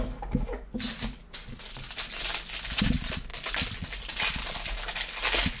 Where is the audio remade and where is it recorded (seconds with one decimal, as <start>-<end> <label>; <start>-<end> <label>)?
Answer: 0.0-5.6 recorded